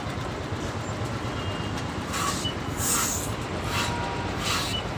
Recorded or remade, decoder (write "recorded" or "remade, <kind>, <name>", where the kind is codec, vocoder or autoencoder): recorded